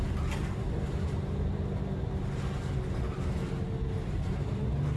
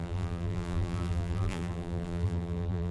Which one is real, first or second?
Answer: first